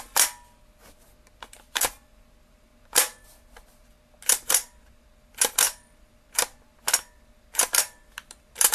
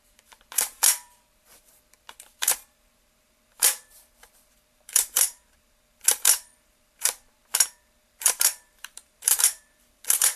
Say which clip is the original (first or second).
first